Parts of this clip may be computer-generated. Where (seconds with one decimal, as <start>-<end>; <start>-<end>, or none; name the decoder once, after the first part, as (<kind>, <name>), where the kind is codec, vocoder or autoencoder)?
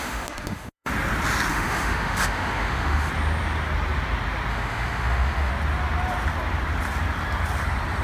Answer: 0.0-0.9 (autoencoder, DAC-VAE); 1.5-3.1; 4.5-5.5